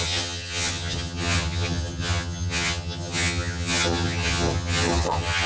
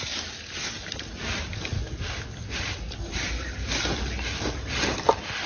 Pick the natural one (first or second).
second